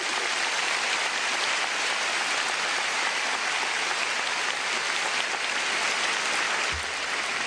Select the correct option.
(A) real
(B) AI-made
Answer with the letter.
A